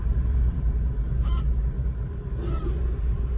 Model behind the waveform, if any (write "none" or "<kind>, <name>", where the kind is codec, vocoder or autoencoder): vocoder, BigVGAN v2